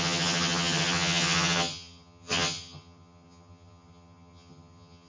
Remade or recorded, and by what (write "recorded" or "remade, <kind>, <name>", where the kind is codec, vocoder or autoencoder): remade, vocoder, HiFi-GAN